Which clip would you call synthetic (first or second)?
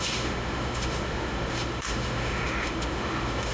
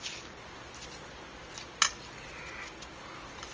first